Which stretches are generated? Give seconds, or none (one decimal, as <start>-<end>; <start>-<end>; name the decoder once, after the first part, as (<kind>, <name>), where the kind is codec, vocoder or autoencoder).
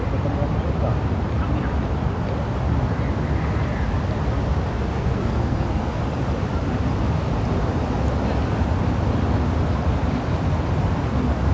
4.9-6.0 (codec, SNAC)